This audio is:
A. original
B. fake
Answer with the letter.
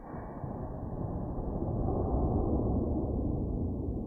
A